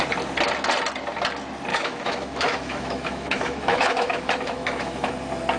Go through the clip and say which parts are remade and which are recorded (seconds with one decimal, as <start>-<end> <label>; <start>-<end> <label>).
0.0-1.7 recorded; 1.7-5.1 remade; 5.1-5.6 recorded